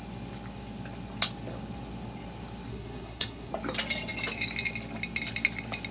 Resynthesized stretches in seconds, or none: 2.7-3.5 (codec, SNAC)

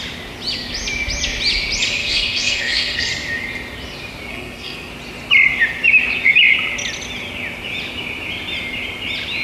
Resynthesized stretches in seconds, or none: 2.0-3.1 (codec, SNAC); 4.3-4.9

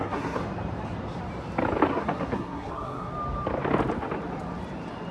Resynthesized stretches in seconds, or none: 0.0-0.4 (codec, SNAC); 1.9-3.1